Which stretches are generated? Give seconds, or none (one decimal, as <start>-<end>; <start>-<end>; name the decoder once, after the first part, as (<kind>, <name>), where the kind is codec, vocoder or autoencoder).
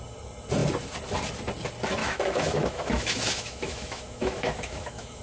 2.0-5.2 (autoencoder, DAC-VAE)